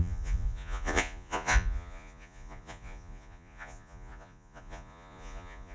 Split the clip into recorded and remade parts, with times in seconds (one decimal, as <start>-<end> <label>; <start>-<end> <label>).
0.0-5.7 remade